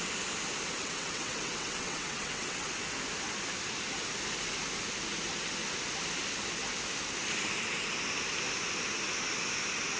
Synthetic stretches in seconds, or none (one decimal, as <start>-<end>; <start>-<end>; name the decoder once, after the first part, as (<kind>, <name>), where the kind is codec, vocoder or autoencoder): 0.8-2.7 (vocoder, WaveNeXt)